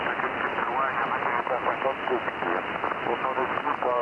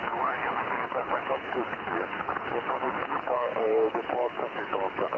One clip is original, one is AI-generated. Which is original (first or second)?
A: first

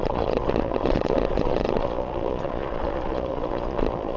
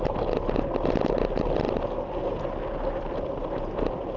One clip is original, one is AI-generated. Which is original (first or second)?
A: second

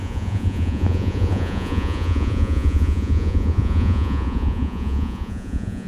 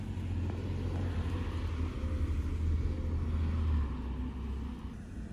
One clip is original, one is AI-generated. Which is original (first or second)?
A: second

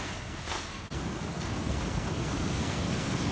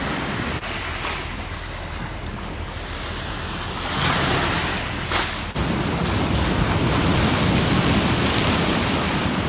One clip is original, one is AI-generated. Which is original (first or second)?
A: second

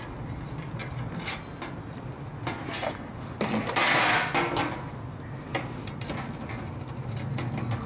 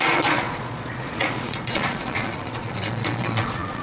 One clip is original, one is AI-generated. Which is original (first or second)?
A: first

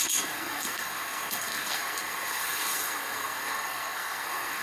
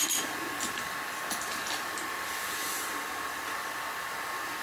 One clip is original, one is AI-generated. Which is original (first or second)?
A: second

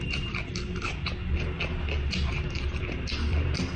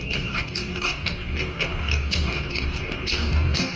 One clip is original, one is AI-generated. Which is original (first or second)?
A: first